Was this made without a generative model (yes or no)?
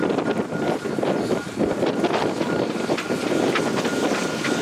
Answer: yes